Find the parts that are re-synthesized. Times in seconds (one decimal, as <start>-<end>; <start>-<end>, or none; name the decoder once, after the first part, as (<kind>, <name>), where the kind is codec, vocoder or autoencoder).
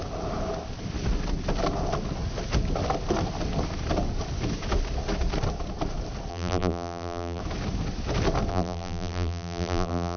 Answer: 6.3-7.4 (vocoder, BigVGAN v2); 8.5-10.2